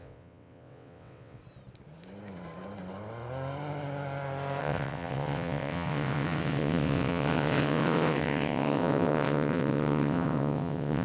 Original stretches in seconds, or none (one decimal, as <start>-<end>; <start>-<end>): 1.4-4.6